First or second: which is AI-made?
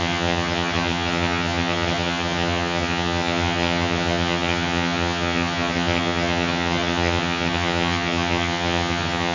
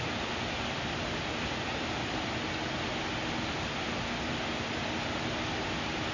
first